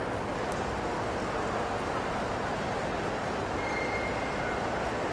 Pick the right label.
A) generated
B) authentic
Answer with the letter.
B